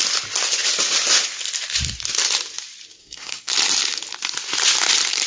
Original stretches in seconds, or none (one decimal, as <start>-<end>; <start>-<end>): 0.0-3.0; 3.5-5.3